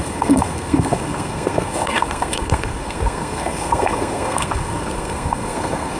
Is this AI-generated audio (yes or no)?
yes